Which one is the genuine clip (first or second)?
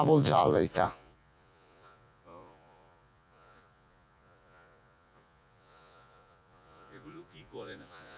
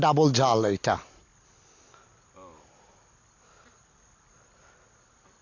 second